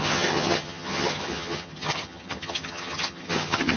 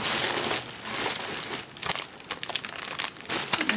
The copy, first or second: first